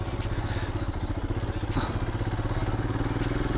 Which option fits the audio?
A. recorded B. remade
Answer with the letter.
A